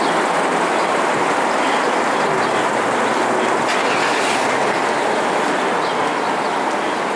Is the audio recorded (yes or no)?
yes